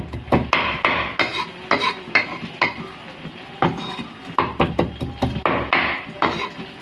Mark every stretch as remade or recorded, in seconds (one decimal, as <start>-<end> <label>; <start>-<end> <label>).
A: 0.0-6.8 recorded